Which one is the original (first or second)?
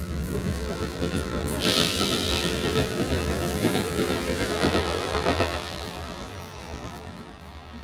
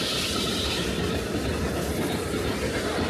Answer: second